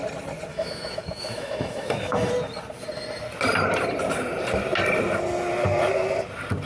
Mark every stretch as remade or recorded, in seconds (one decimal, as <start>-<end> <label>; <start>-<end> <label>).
0.0-0.5 recorded; 0.5-2.3 remade; 2.3-6.7 recorded

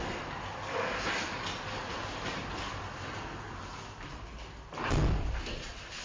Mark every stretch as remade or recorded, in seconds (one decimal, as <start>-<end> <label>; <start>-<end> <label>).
0.0-6.0 recorded

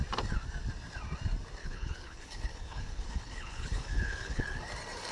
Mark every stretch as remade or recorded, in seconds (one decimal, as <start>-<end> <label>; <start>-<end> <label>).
0.0-1.6 recorded; 1.6-4.6 remade; 4.6-5.1 recorded

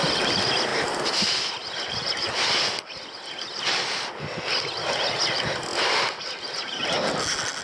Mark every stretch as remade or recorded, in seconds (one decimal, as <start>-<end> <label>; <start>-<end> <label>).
0.0-5.7 recorded; 5.7-6.2 remade; 6.2-7.6 recorded

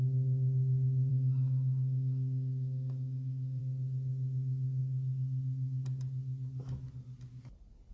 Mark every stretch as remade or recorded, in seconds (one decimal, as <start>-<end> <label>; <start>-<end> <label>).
0.0-1.1 recorded; 1.1-3.6 remade; 3.6-7.9 recorded

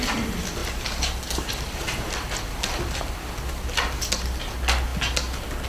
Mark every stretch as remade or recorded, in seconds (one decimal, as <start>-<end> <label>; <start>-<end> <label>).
0.0-5.7 recorded

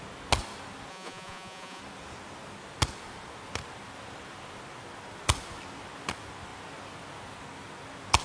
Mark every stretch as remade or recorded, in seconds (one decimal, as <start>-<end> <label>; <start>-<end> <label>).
0.0-0.9 recorded; 0.9-1.8 remade; 1.8-8.2 recorded